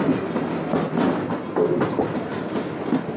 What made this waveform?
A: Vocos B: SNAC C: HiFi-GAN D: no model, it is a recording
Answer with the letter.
D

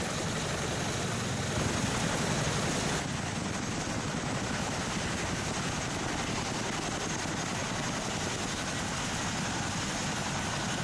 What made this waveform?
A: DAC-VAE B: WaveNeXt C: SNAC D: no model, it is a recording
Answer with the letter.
D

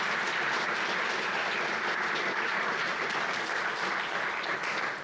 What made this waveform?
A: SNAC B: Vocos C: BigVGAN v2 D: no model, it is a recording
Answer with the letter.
D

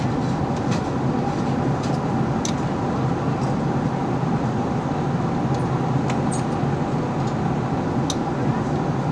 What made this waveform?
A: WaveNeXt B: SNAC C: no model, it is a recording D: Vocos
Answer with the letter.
C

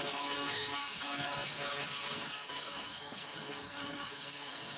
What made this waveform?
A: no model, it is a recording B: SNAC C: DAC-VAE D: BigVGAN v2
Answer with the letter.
B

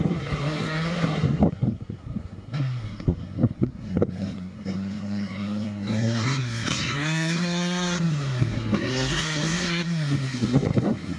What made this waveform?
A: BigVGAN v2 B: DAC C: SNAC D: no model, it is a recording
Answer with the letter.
C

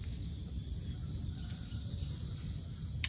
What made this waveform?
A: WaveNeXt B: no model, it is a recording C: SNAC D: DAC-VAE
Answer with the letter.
B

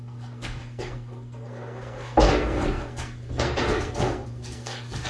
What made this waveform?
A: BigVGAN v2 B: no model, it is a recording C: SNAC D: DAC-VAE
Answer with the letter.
C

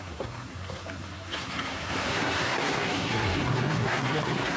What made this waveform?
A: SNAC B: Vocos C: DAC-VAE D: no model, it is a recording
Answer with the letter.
A